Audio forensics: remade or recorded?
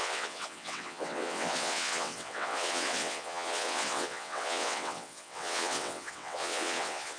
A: remade